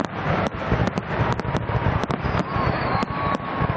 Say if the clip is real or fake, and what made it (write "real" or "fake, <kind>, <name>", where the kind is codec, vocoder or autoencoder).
real